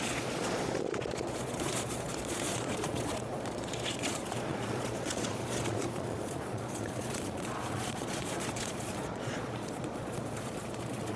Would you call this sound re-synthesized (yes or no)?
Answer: yes